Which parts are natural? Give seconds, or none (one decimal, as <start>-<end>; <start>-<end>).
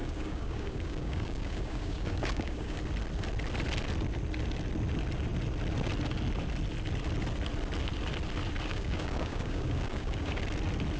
2.8-8.7; 10.4-11.0